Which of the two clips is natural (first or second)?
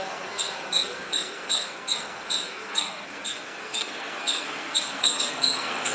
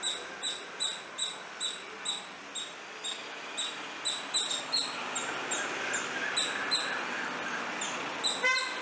second